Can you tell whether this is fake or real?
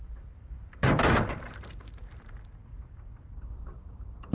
fake